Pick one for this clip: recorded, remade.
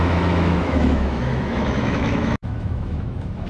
remade